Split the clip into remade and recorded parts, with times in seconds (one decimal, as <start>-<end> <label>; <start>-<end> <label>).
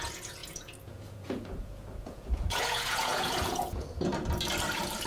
0.0-4.1 remade; 4.1-5.1 recorded